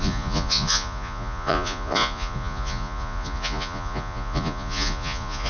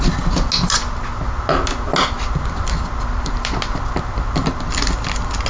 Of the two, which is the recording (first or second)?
second